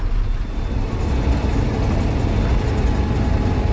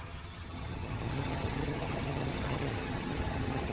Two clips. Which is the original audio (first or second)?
first